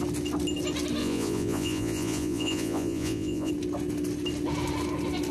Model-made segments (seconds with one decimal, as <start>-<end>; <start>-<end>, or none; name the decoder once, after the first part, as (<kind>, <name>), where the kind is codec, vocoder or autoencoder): 1.0-3.5 (vocoder, Vocos)